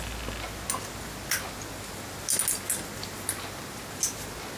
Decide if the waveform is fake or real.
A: real